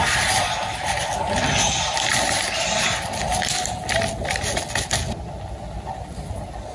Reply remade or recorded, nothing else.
recorded